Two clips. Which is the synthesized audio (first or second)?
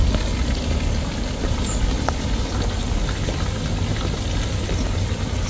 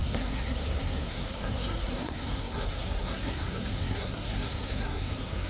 second